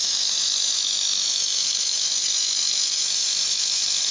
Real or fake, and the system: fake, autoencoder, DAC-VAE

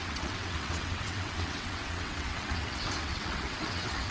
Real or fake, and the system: fake, vocoder, WaveNeXt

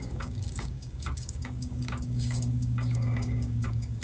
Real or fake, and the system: fake, codec, DAC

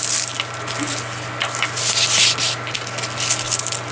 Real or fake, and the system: real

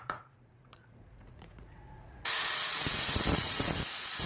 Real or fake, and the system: fake, vocoder, Vocos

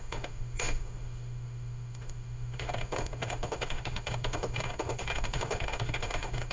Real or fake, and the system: fake, autoencoder, DAC-VAE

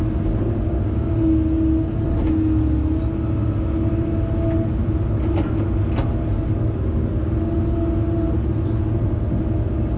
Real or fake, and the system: real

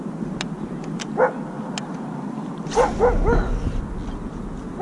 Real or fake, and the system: real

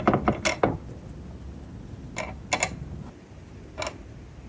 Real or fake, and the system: real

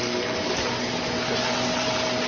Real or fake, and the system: real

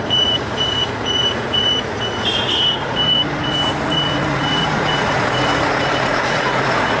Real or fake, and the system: fake, vocoder, Vocos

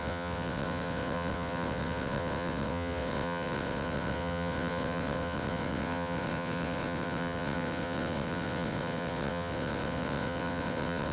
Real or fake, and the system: fake, vocoder, WaveNeXt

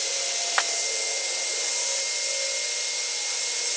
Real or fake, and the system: real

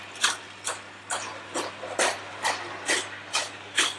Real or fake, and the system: real